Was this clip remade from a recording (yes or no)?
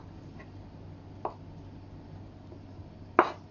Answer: yes